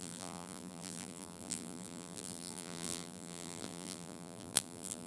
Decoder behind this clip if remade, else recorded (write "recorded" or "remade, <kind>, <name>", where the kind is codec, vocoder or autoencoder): remade, vocoder, BigVGAN v2